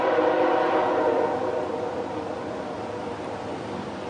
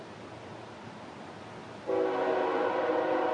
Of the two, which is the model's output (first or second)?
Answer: first